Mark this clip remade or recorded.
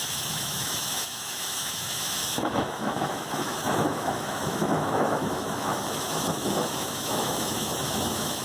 remade